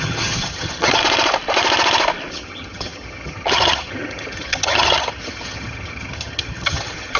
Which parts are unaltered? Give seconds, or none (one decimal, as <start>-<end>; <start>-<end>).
1.0-2.3